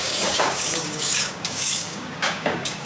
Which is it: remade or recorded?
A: remade